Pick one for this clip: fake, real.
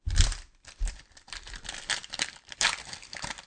fake